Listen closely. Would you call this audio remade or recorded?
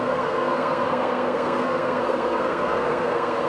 remade